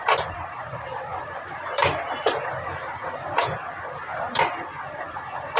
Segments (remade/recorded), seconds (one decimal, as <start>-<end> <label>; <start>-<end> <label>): 0.0-3.4 remade; 3.4-5.6 recorded